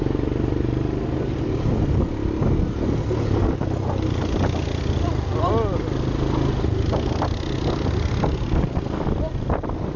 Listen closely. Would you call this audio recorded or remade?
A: recorded